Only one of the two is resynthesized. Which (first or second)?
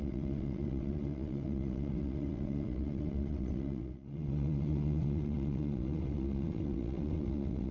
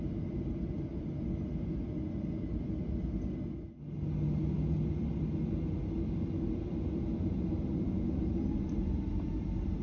first